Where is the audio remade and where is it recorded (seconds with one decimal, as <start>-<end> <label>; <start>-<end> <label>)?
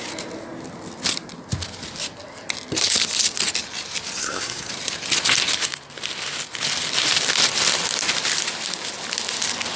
0.0-4.2 recorded; 4.2-4.7 remade; 4.7-9.8 recorded